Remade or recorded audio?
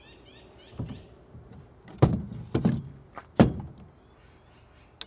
recorded